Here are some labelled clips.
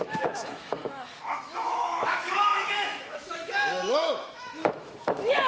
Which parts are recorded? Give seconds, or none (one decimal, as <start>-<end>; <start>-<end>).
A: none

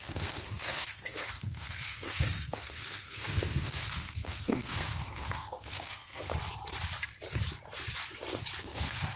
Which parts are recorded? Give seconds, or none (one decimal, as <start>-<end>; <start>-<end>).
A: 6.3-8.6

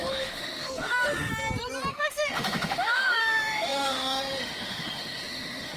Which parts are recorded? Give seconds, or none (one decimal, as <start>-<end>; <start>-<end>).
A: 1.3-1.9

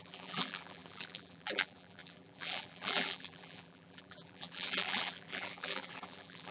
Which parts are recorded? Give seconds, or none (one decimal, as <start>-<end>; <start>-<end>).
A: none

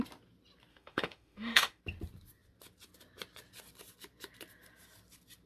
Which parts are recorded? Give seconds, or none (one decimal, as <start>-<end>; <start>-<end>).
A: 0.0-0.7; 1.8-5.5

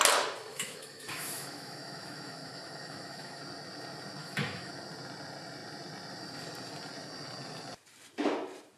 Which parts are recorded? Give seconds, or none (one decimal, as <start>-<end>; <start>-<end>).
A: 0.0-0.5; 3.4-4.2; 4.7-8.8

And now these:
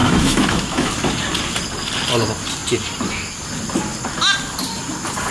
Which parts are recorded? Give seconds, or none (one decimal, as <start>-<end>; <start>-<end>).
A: 0.9-5.3